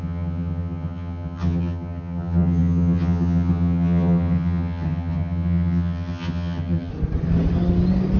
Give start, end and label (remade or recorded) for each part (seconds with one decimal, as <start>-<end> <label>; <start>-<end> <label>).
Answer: 0.0-6.9 remade; 6.9-8.2 recorded